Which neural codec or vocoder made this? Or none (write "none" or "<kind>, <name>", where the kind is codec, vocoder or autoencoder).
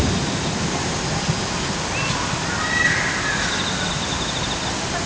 none